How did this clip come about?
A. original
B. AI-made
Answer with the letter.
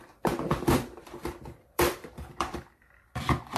B